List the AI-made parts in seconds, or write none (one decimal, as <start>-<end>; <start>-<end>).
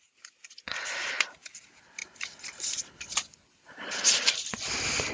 none